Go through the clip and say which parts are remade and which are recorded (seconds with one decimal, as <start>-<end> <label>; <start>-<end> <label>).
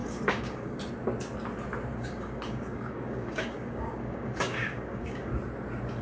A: 0.0-0.8 remade; 0.8-1.9 recorded; 1.9-5.3 remade; 5.3-6.0 recorded